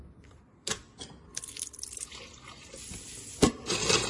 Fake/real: fake